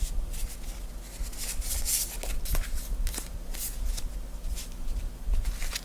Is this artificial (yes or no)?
no